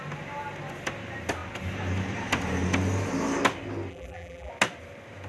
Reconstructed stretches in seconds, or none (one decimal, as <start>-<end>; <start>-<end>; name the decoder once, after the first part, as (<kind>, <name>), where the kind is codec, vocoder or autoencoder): 3.9-4.5 (vocoder, BigVGAN v2)